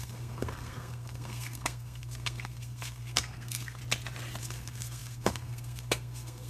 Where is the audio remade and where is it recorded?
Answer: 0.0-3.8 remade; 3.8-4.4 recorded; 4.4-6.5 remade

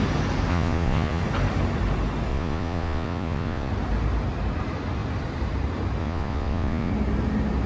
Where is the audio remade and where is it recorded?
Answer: 0.0-0.5 recorded; 0.5-1.2 remade; 1.2-2.3 recorded; 2.3-3.7 remade; 3.7-6.0 recorded; 6.0-6.9 remade; 6.9-7.7 recorded